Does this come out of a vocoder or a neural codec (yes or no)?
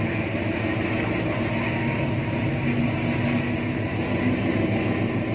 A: no